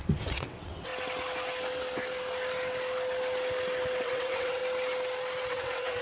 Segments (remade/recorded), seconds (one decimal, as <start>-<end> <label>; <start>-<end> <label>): 0.0-0.9 remade; 0.9-4.0 recorded; 4.0-4.6 remade; 4.6-5.5 recorded; 5.5-6.0 remade